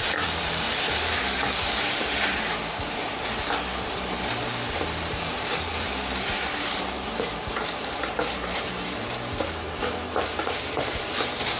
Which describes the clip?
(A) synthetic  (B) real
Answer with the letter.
A